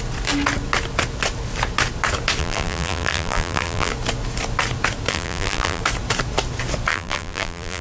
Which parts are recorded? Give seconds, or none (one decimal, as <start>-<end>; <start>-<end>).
0.0-2.4; 3.9-5.1; 5.8-6.9